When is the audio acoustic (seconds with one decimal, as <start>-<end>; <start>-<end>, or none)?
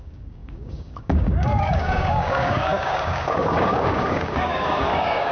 none